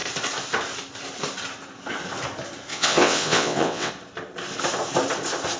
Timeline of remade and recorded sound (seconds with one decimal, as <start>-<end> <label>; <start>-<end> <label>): 0.0-2.7 recorded; 2.7-3.9 remade; 3.9-5.6 recorded